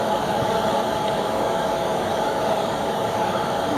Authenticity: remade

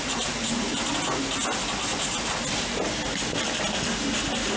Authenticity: recorded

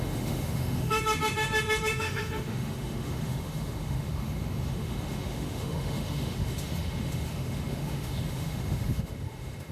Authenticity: remade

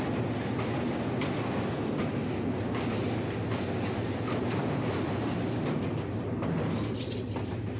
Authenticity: recorded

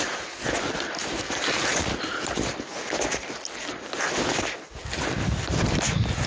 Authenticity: recorded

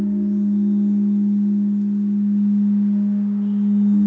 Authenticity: recorded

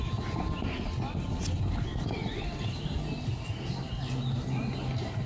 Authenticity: recorded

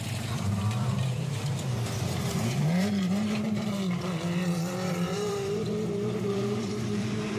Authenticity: remade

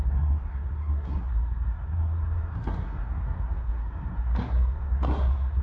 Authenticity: remade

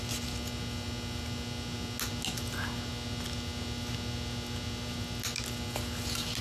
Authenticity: recorded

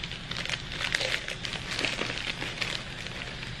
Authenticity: recorded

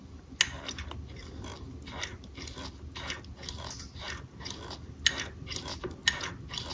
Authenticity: recorded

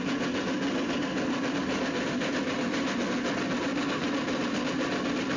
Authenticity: recorded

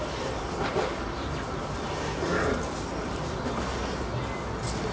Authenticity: recorded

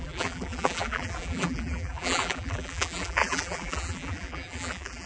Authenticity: remade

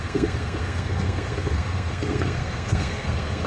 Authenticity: remade